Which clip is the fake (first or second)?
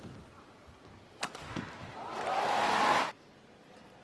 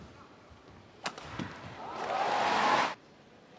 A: first